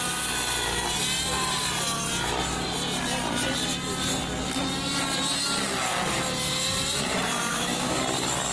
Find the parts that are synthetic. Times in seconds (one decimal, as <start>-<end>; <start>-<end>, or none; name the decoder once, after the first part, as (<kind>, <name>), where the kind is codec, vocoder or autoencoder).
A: 7.5-8.0 (autoencoder, DAC-VAE)